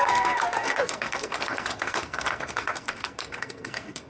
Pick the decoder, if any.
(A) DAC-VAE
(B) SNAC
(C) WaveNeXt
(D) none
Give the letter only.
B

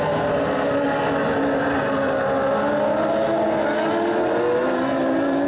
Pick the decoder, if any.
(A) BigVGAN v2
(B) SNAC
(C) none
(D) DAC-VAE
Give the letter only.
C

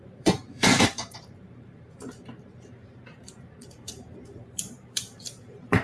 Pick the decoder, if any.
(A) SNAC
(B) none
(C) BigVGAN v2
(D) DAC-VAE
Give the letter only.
C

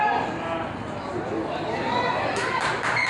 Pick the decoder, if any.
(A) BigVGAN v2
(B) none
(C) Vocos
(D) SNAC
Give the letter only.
B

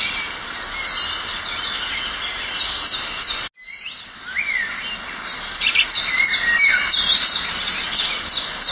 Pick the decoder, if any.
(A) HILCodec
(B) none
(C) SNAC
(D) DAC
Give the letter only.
B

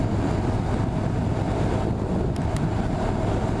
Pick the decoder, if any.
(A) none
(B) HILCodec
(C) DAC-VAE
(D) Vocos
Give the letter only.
A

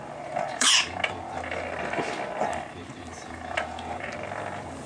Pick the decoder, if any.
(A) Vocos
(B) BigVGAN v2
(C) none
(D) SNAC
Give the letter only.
B